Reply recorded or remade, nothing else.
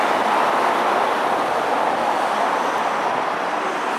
recorded